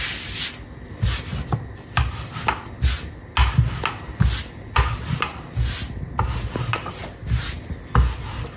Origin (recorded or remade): recorded